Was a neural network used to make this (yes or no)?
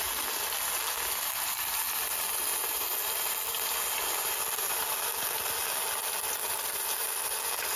no